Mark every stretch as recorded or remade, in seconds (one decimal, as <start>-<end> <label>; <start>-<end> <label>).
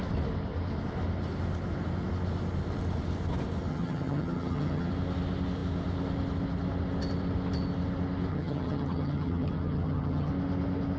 0.0-3.7 recorded; 3.7-4.9 remade; 4.9-8.3 recorded; 8.3-10.3 remade; 10.3-11.0 recorded